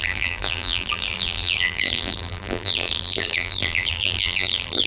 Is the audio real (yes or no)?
no